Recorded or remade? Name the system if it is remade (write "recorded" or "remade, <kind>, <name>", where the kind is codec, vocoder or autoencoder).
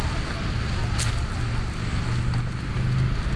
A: recorded